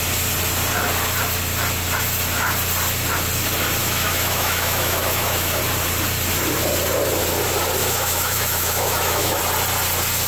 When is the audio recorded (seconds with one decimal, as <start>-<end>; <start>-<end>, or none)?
0.0-3.8; 5.6-7.8; 9.4-10.3